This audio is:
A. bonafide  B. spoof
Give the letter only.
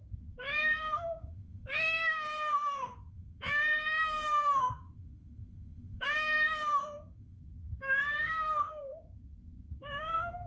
B